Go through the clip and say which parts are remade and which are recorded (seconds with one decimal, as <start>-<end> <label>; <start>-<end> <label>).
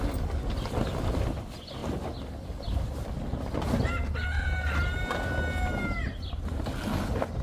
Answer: 0.0-7.4 recorded